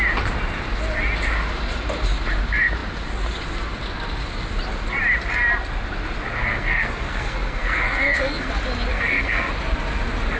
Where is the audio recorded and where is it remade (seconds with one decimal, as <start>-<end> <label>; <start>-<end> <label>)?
0.0-6.4 recorded; 6.4-8.5 remade; 8.5-8.9 recorded; 8.9-9.5 remade; 9.5-10.4 recorded